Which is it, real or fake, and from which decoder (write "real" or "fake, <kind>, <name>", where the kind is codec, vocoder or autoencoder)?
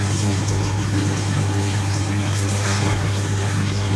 fake, codec, SNAC